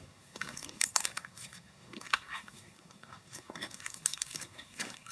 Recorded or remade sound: remade